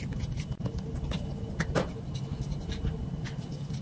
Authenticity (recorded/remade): recorded